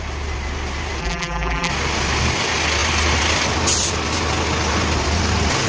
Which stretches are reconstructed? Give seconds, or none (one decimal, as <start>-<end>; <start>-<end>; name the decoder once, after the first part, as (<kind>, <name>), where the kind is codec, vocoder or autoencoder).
1.0-1.7 (vocoder, BigVGAN v2)